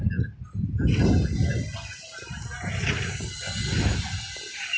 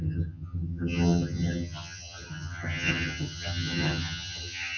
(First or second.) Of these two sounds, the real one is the first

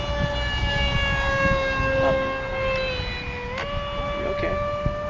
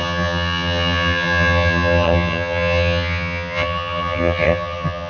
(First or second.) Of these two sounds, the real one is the first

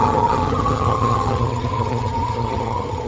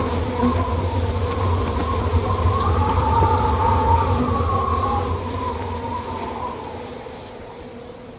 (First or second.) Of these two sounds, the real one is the second